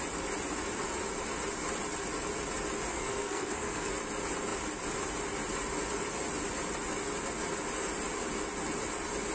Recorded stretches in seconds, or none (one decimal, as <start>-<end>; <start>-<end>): 0.0-2.9; 3.9-9.3